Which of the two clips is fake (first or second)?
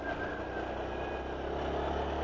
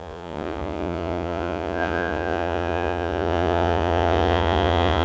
second